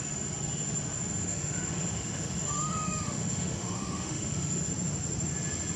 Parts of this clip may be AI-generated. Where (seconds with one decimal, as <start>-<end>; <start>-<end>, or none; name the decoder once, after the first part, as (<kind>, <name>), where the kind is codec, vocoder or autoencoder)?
1.2-4.7 (autoencoder, DAC-VAE)